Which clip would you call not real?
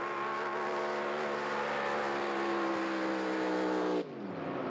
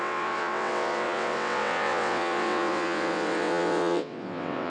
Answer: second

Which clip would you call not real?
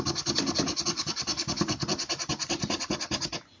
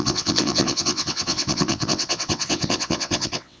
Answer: second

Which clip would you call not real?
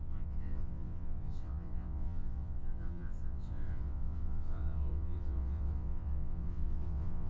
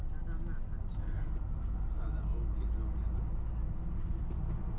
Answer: first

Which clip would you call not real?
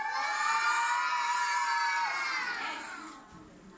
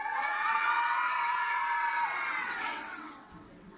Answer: second